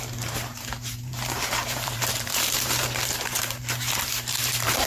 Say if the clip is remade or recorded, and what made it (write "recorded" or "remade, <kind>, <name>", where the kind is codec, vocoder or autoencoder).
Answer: remade, vocoder, BigVGAN v2